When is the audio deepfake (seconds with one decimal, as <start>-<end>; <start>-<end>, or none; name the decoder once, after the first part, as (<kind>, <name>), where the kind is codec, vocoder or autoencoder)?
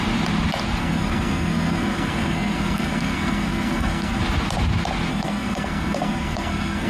0.8-4.2 (codec, SNAC); 5.1-6.9